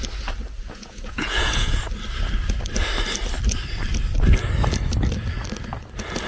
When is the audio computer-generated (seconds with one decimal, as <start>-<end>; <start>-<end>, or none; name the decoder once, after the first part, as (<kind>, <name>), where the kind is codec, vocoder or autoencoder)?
0.6-1.8 (vocoder, Vocos)